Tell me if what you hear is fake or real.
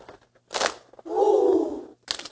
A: real